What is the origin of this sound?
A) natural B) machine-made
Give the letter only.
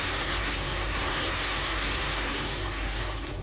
B